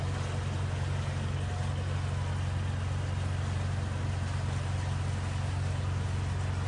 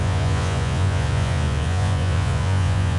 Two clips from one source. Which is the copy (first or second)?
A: second